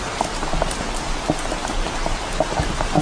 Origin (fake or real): real